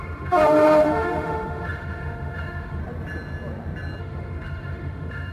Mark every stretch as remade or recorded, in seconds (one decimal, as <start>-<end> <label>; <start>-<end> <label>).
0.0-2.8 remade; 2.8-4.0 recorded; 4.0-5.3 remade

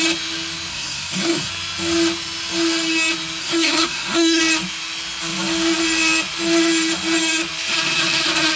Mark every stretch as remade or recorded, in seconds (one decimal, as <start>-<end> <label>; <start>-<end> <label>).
0.0-0.7 recorded; 0.7-1.5 remade; 1.5-3.4 recorded; 3.4-4.4 remade; 4.4-8.6 recorded

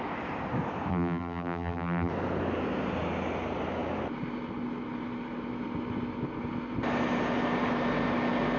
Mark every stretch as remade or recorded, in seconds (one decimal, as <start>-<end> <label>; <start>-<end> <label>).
0.0-0.9 recorded; 0.9-2.1 remade; 2.1-8.6 recorded

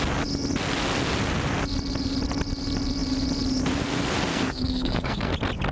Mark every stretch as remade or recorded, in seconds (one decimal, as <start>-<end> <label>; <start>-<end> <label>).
0.0-4.3 recorded; 4.3-5.3 remade; 5.3-5.7 recorded

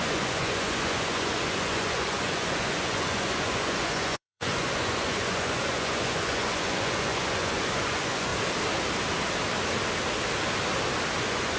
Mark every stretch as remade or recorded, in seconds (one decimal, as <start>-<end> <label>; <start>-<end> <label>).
0.0-8.3 remade; 8.3-11.2 recorded; 11.2-11.6 remade